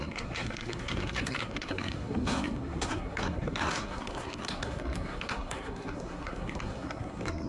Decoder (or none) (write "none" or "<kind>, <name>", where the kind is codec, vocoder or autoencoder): codec, SNAC